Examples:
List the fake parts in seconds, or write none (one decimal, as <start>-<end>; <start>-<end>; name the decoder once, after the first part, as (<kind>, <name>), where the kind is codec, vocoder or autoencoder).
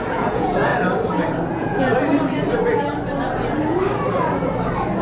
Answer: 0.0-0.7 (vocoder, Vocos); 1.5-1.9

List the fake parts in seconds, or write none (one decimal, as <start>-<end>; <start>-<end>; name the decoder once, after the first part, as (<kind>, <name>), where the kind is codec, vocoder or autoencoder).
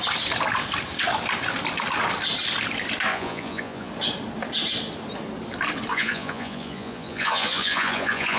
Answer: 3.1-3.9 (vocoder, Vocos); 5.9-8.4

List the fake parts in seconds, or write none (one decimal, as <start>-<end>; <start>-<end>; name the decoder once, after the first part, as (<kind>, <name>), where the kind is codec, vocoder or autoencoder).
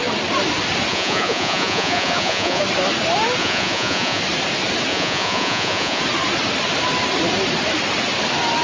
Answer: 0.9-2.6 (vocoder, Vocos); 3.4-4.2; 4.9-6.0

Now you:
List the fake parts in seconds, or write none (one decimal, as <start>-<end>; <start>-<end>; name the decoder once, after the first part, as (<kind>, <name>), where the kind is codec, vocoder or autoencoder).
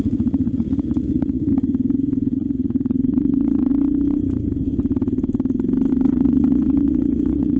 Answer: 0.0-1.5 (vocoder, Vocos); 2.3-3.7; 5.9-7.6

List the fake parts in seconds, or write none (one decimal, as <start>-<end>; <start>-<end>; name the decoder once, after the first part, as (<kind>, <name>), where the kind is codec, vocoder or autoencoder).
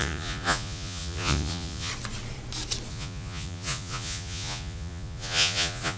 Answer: 0.0-1.9 (vocoder, Vocos); 2.9-6.0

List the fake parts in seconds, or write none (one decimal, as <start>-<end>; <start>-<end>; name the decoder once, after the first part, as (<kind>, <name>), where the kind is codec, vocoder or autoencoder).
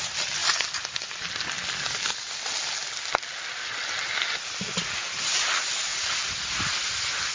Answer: none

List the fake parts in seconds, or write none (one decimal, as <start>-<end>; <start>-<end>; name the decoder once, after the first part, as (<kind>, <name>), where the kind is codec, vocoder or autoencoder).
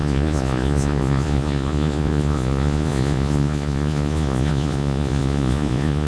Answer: 0.0-6.1 (vocoder, Vocos)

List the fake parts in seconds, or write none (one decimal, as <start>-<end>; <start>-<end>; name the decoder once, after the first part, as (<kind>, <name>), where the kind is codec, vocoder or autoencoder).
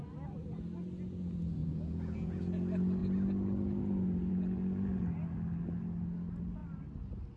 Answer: 1.6-2.4 (vocoder, Vocos)